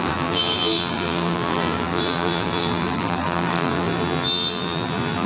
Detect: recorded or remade remade